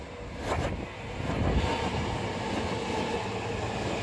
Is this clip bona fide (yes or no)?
yes